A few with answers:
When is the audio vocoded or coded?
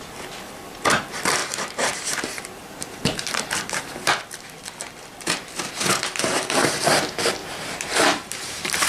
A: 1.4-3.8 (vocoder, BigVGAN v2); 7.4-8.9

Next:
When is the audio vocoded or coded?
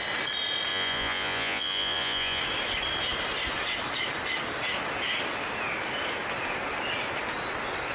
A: 0.7-2.4 (vocoder, Vocos)